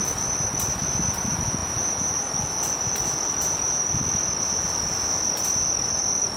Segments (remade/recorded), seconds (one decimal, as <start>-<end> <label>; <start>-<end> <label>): 0.0-6.4 recorded